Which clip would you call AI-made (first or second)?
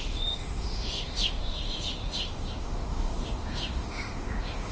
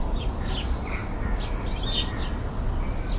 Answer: first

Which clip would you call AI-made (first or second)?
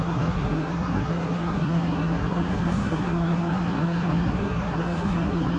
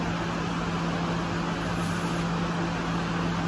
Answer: first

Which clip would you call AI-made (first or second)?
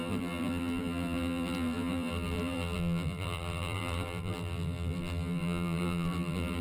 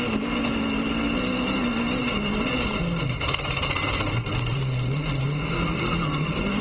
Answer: first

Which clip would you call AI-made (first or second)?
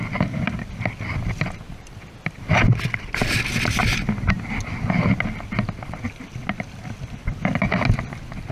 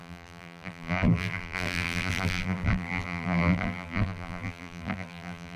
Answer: second